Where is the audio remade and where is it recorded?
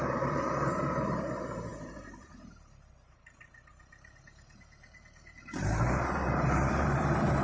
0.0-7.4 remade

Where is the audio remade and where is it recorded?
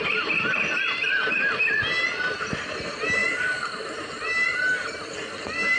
0.0-5.8 recorded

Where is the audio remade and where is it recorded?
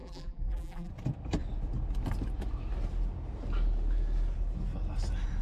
0.0-0.9 remade; 0.9-5.4 recorded